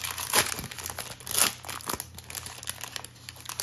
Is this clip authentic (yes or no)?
yes